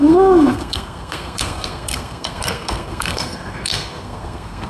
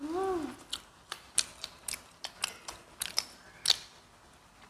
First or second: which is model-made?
first